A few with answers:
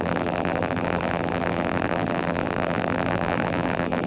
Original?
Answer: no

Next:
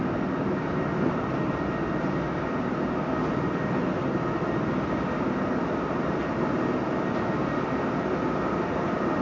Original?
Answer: yes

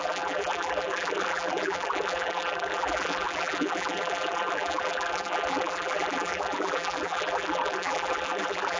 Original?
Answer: no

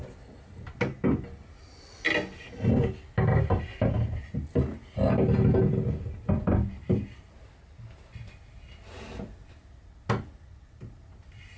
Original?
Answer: yes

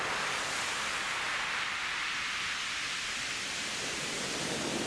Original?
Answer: yes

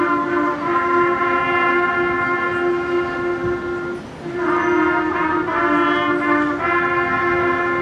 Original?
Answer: yes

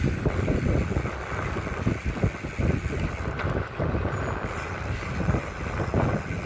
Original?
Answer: yes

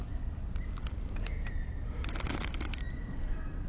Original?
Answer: yes